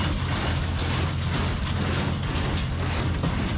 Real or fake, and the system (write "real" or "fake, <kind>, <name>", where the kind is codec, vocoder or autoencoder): real